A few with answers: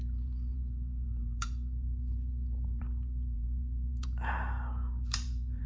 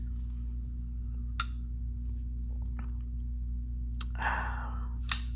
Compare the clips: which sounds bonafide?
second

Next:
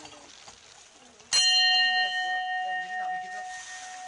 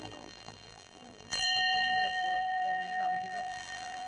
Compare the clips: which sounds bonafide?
first